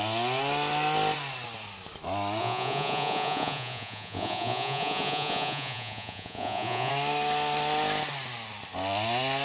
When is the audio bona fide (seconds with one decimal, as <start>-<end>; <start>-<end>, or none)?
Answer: 0.0-2.4; 6.9-9.4